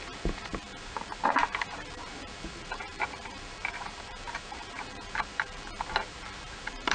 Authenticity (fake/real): fake